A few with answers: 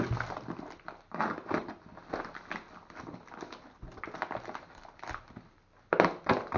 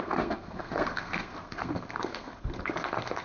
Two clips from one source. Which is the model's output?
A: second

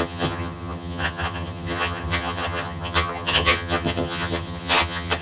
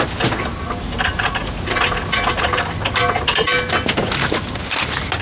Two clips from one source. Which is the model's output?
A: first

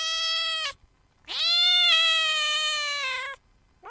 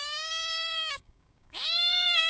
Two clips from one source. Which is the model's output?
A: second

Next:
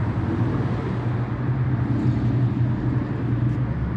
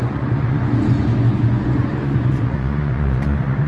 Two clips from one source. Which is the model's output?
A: second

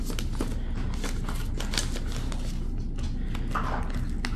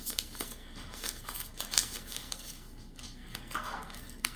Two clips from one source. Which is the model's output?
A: second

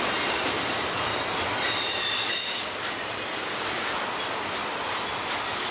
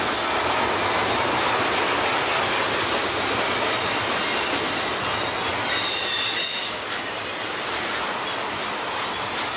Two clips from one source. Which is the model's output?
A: first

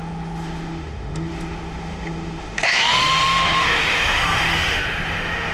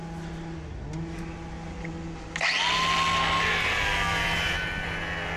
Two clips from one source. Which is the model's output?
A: first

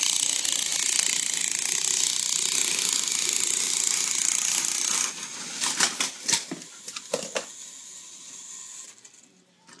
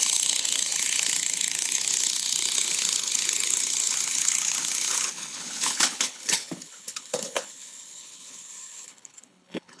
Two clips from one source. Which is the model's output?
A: second